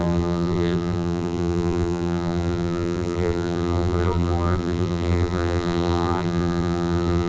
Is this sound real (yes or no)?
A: no